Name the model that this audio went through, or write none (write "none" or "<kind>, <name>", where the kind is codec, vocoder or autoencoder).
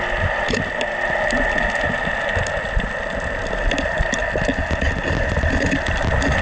none